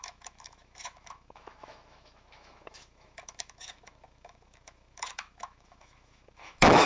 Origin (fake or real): fake